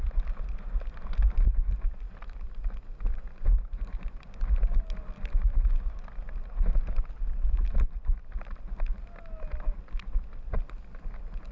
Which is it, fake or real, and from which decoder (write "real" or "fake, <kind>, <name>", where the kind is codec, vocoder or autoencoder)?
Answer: real